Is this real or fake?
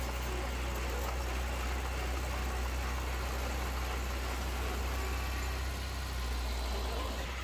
real